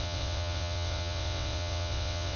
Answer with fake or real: fake